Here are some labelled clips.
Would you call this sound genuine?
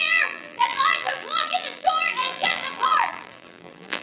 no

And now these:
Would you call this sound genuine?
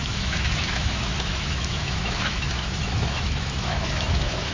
no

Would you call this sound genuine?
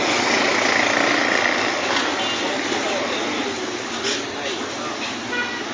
yes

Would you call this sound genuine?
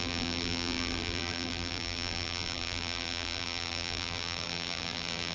no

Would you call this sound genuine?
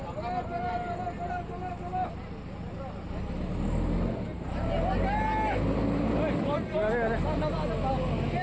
yes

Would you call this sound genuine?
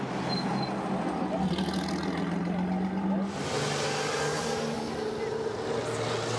yes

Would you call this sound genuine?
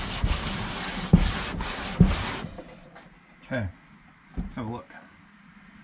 yes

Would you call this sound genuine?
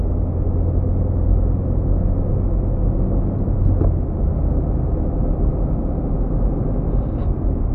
yes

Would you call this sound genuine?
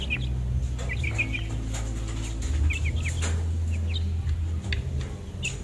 yes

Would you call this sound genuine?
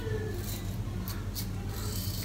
yes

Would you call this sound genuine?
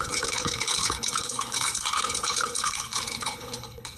no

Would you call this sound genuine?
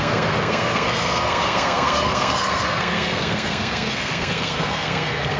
no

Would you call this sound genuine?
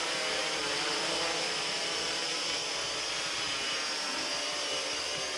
no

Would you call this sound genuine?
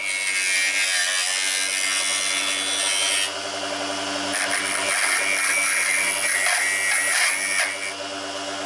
yes